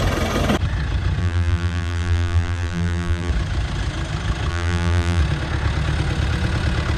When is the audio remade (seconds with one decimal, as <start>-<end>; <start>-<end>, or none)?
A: 1.2-3.3; 4.5-5.2